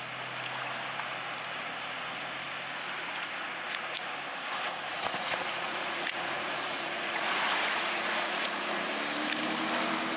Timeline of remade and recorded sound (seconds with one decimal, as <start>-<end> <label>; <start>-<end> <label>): 0.0-3.0 recorded; 3.0-4.1 remade; 4.1-4.9 recorded; 4.9-8.9 remade; 8.9-10.2 recorded